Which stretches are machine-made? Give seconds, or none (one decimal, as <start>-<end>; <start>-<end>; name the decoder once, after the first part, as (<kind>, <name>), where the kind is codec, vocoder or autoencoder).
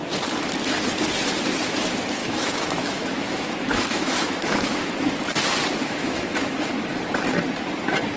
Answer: 2.2-4.6 (autoencoder, DAC-VAE); 5.8-6.7